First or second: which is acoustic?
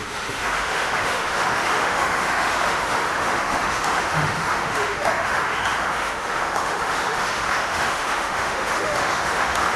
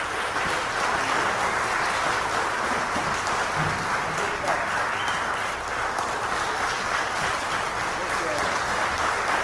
second